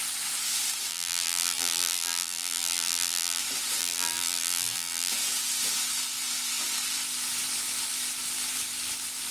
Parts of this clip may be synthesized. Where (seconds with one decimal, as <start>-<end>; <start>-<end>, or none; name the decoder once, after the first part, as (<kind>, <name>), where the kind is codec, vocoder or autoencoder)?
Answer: 0.9-3.4 (vocoder, BigVGAN v2); 3.8-5.1